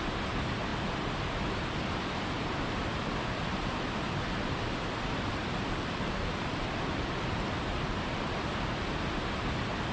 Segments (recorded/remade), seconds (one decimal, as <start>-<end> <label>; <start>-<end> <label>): 0.0-9.9 recorded